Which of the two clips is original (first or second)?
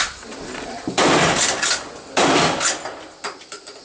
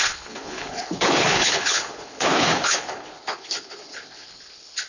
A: first